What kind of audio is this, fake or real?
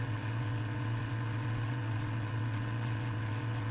fake